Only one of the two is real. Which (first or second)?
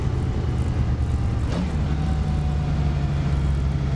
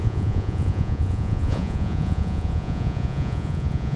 first